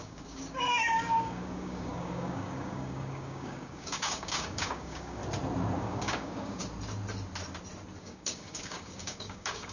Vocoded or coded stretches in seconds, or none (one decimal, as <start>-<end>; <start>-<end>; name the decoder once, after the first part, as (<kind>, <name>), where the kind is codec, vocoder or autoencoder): 0.0-5.2 (codec, DAC); 5.8-6.6; 8.0-9.7